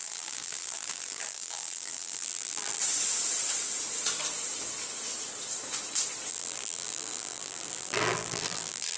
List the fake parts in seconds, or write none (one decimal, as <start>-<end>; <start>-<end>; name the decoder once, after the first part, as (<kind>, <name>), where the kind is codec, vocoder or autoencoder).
0.0-2.8 (vocoder, BigVGAN v2); 6.3-9.0